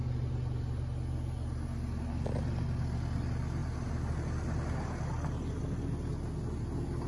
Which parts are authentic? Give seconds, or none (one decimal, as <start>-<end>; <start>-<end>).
0.0-7.1